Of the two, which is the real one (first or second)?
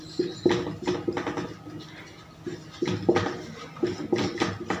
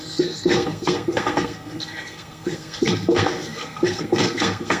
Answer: first